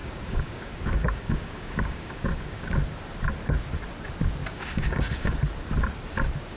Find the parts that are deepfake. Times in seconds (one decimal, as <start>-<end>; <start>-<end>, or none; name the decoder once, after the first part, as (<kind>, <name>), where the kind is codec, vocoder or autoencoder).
0.0-2.7 (codec, DAC); 4.4-5.3